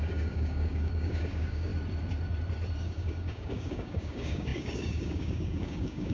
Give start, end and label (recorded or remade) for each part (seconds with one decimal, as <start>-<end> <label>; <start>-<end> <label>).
0.0-1.7 remade; 1.7-2.8 recorded; 2.8-6.1 remade